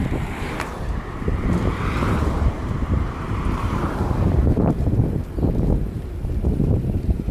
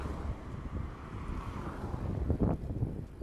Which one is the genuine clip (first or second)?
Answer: second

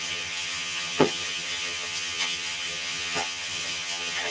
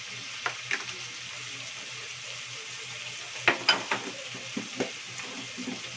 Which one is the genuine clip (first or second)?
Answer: second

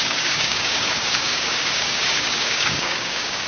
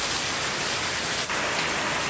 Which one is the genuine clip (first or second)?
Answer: second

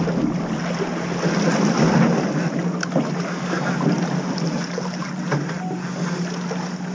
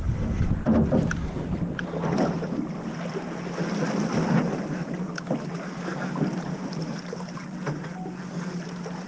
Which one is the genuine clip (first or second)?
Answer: first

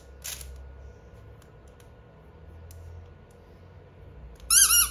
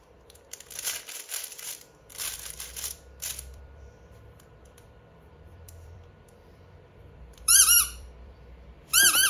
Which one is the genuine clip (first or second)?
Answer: first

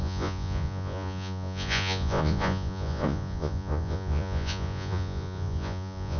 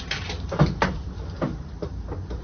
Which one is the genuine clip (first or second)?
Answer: second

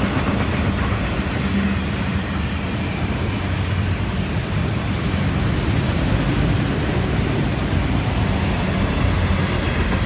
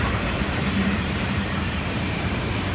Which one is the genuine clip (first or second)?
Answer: first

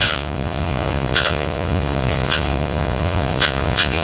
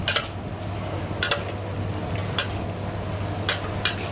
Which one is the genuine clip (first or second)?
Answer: second